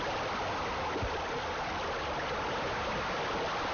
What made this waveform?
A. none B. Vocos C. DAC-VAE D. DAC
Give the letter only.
A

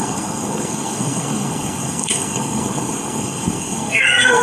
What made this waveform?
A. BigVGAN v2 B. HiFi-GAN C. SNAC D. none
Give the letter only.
C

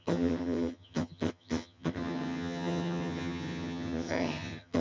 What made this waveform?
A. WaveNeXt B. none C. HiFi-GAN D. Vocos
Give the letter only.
C